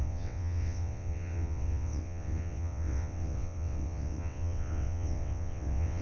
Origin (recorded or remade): remade